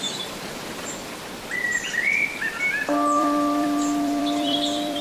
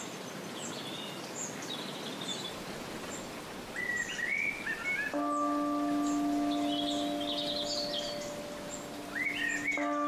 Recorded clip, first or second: second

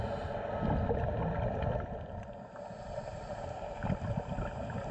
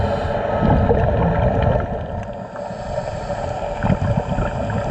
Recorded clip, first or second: second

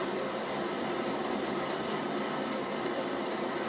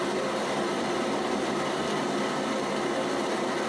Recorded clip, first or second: second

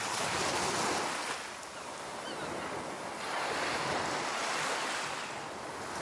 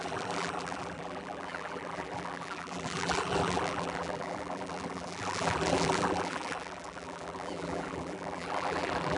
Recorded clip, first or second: first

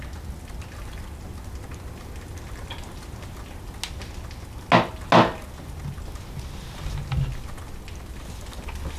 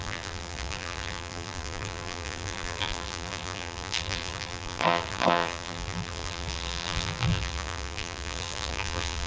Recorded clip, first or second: first